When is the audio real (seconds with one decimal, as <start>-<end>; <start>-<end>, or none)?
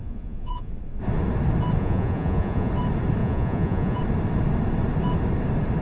0.7-1.8; 2.7-3.2; 4.0-5.8